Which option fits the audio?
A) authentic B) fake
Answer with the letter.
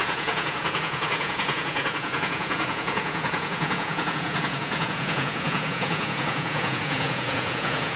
B